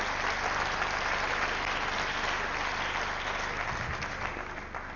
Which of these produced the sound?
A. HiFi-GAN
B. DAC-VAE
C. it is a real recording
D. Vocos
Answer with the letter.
C